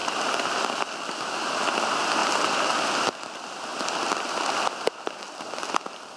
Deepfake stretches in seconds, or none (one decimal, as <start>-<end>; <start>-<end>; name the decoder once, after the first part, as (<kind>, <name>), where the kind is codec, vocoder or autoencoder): none